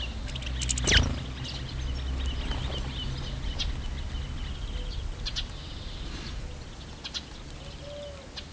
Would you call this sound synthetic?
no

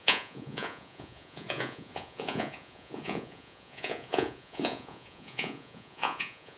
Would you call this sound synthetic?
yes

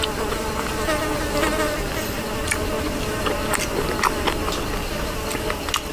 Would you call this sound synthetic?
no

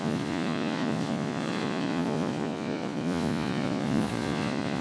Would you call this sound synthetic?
yes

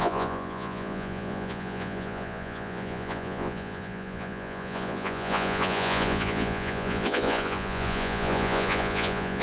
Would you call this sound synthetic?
yes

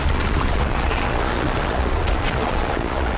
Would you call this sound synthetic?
yes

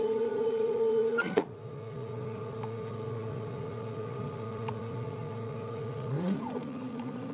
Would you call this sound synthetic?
yes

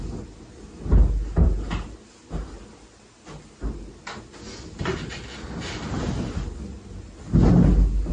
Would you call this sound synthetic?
no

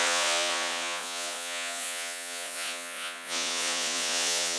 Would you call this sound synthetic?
yes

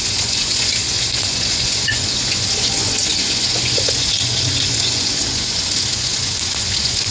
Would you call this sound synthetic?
yes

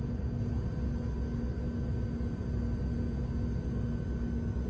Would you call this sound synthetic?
no